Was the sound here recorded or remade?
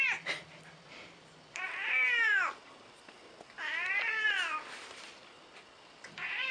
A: remade